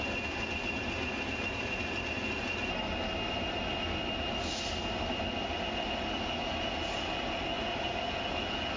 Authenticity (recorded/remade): recorded